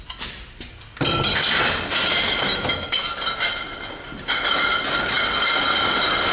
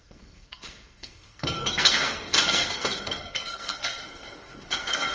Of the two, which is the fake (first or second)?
second